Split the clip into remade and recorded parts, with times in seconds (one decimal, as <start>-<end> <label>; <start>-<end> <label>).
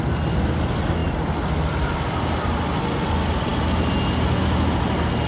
0.0-5.3 recorded